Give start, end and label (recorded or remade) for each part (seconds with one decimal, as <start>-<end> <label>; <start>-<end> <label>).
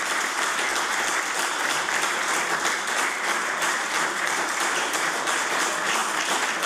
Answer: 0.0-0.7 remade; 0.7-1.4 recorded; 1.4-6.0 remade; 6.0-6.7 recorded